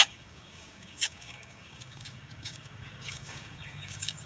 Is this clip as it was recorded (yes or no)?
no